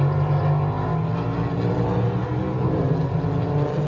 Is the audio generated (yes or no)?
no